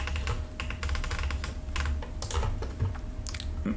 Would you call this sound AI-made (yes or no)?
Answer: no